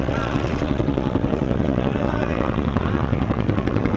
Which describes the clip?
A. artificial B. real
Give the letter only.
A